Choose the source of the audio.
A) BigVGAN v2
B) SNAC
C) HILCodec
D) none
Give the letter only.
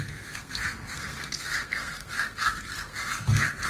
B